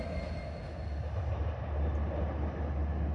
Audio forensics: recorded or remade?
recorded